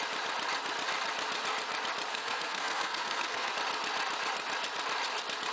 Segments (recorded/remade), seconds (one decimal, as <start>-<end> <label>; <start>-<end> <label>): 0.0-2.1 recorded; 2.1-3.5 remade; 3.5-5.5 recorded

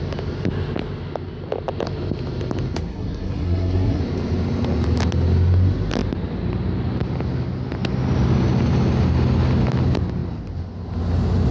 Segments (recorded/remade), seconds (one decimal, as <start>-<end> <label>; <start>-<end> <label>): 0.0-2.9 recorded; 2.9-4.0 remade; 4.0-11.5 recorded

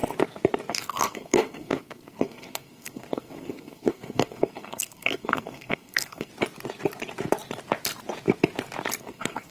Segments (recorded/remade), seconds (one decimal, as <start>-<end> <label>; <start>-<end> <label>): 0.0-0.7 recorded; 0.7-6.3 remade; 6.3-9.0 recorded; 9.0-9.5 remade